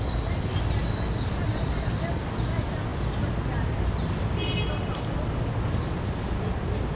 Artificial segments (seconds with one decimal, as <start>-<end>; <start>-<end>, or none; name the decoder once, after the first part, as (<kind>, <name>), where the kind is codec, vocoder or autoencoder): none